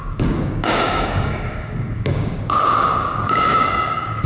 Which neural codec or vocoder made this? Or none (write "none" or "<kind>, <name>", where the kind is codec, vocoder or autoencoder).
codec, DAC